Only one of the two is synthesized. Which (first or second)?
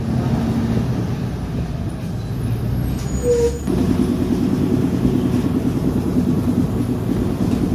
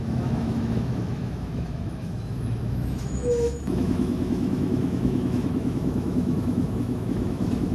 second